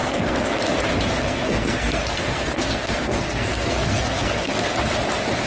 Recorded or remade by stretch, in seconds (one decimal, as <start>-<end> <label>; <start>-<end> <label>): 0.0-0.6 remade; 0.6-1.2 recorded; 1.2-4.5 remade; 4.5-5.5 recorded